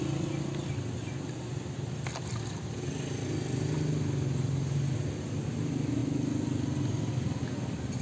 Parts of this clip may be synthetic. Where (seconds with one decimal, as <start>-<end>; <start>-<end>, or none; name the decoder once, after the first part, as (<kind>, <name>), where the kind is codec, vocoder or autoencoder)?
none